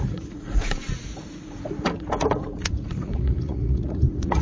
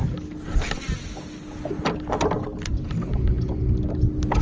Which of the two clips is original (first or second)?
second